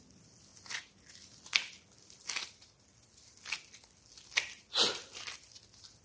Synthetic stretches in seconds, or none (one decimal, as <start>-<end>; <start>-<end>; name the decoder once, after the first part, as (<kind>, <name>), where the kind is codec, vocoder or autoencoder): none